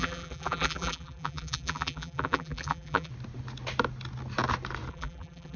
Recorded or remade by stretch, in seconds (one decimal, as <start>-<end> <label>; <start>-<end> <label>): 0.0-3.1 remade; 3.1-4.9 recorded; 4.9-5.6 remade